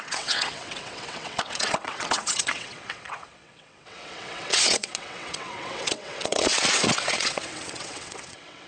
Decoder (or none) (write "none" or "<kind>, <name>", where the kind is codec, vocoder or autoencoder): vocoder, WaveNeXt